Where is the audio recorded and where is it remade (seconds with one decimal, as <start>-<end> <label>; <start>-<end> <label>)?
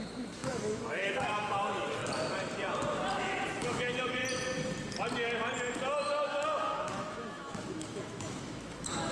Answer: 0.0-2.0 remade; 2.0-3.5 recorded; 3.5-4.2 remade; 4.2-6.8 recorded; 6.8-9.1 remade